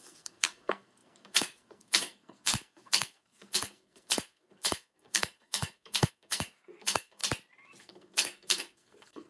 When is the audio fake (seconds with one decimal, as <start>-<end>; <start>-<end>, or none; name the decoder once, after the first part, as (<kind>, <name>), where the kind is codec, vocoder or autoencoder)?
0.0-7.2 (codec, SNAC); 7.8-9.3